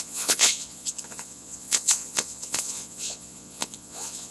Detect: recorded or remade remade